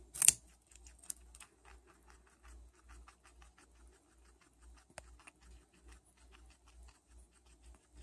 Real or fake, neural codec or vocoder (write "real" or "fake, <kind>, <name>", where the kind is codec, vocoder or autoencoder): real